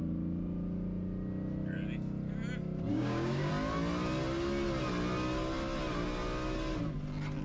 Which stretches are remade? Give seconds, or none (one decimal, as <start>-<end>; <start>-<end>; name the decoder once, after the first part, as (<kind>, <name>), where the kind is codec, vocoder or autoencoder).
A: 2.9-3.5 (codec, DAC)